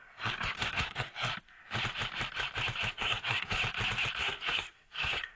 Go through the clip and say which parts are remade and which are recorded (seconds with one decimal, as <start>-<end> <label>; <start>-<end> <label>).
0.0-1.3 remade; 1.3-2.9 recorded; 2.9-3.6 remade; 3.6-4.2 recorded; 4.2-5.4 remade